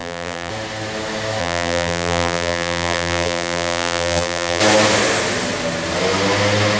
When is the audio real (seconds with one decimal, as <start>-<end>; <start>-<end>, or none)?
0.5-1.4; 4.6-6.8

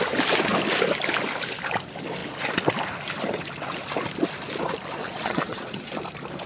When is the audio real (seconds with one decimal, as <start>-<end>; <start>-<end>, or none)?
0.0-5.0; 5.9-6.5